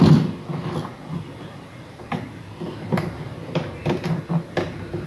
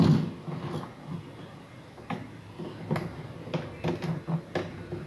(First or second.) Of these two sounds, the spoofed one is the first